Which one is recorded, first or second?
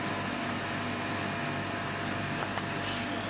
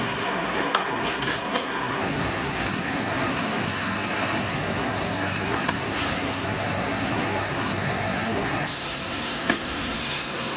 first